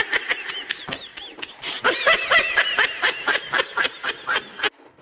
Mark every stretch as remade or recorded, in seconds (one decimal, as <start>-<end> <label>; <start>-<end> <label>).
0.0-1.1 recorded; 1.1-4.1 remade; 4.1-5.0 recorded